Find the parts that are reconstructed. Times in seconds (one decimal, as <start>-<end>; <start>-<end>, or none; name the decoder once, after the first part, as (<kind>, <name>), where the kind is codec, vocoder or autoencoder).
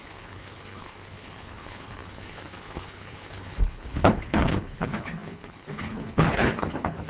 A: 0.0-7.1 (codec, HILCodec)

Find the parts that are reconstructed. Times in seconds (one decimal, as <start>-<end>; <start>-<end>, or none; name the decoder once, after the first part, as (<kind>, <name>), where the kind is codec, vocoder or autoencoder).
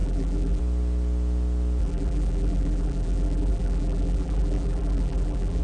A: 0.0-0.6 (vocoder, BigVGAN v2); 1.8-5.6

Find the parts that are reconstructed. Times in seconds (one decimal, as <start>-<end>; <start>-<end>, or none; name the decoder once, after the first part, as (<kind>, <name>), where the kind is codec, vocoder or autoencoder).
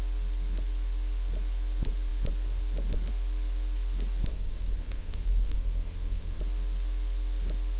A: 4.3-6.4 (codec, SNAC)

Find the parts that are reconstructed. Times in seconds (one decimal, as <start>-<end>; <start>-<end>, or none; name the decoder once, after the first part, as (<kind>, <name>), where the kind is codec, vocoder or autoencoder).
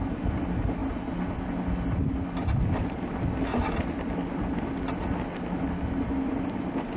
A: none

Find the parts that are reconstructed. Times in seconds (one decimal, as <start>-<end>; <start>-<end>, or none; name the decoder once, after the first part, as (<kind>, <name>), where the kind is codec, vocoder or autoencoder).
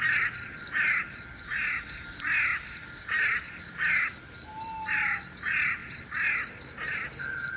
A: none